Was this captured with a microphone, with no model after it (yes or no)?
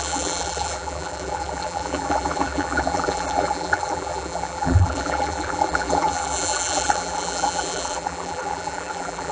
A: no